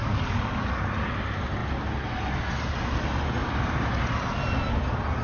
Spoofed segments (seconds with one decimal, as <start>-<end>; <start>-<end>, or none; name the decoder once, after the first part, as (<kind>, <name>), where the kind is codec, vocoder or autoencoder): 0.0-0.8 (codec, DAC)